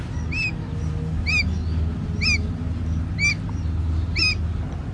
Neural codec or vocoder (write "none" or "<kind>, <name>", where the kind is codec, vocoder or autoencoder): none